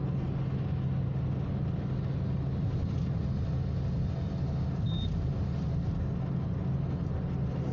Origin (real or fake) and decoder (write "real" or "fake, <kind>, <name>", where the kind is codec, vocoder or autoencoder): real